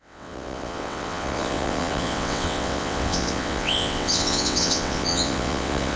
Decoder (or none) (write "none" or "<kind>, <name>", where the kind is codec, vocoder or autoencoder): vocoder, WaveNeXt